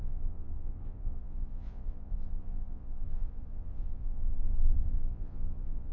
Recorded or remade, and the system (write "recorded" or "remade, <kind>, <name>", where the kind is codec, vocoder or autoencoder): remade, vocoder, Vocos